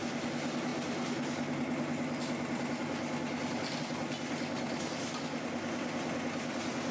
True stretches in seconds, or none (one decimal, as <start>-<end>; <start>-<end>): 0.0-6.9